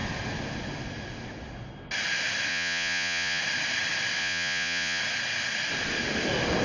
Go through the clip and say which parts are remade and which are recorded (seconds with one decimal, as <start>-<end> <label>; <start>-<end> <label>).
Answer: 0.0-2.5 recorded; 2.5-3.4 remade; 3.4-4.2 recorded; 4.2-5.0 remade; 5.0-6.6 recorded